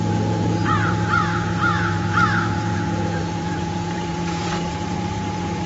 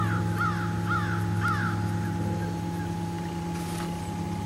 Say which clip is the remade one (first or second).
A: first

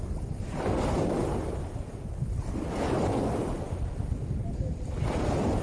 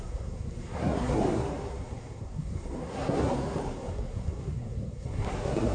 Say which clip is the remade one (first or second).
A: second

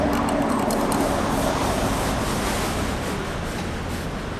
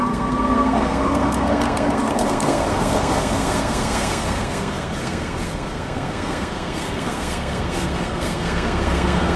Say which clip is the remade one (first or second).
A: second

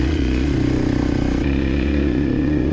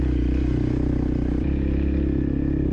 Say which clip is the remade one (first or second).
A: first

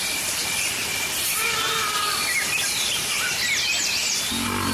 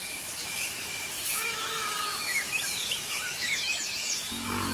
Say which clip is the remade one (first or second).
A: second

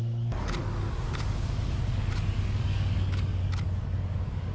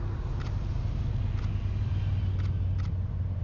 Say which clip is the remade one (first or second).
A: first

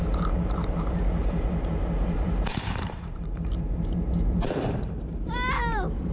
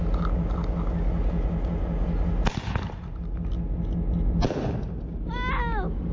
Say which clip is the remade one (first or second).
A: first